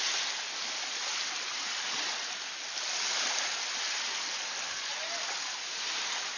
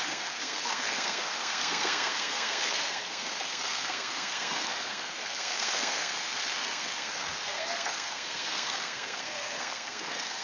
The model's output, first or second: second